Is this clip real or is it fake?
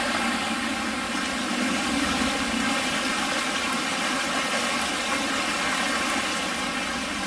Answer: real